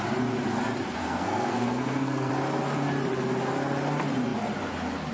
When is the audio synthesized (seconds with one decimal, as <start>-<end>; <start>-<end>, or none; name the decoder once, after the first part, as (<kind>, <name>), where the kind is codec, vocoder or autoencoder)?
1.0-2.3 (codec, SNAC)

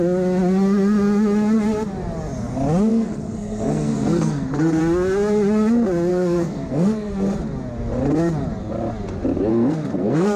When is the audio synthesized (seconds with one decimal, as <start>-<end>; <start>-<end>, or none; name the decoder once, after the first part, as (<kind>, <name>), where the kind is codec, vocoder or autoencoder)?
2.9-4.8 (codec, SNAC); 6.1-7.1; 9.5-10.4

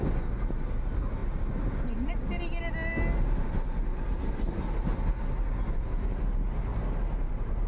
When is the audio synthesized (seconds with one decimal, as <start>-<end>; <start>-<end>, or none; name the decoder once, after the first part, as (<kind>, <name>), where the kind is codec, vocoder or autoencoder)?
none

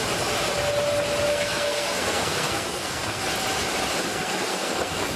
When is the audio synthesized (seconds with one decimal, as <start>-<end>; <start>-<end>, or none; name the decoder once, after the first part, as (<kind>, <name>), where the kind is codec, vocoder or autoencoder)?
1.3-3.2 (codec, SNAC); 4.1-5.2

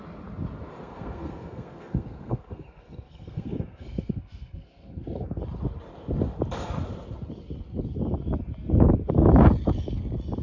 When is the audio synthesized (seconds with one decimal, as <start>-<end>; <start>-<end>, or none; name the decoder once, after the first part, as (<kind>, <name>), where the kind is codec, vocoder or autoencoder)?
0.8-5.4 (codec, SNAC)

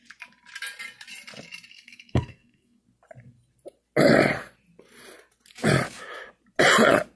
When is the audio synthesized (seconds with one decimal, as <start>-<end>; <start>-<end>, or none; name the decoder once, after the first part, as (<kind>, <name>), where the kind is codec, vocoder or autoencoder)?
1.7-2.8 (codec, SNAC)

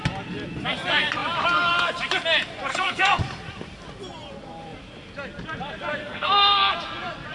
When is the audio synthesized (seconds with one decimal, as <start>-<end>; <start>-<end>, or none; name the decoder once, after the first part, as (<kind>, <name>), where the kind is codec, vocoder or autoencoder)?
2.7-3.2 (codec, SNAC); 6.0-6.7

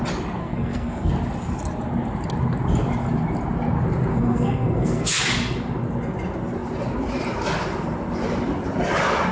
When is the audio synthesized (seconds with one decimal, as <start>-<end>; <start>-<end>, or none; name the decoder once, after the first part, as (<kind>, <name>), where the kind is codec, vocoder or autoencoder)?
0.4-1.1 (codec, SNAC); 4.1-5.2